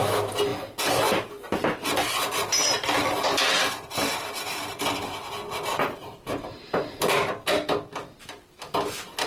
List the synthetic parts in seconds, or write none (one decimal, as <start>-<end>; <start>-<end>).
none